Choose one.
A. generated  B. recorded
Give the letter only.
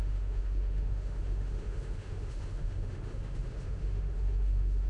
A